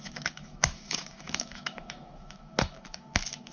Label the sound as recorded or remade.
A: remade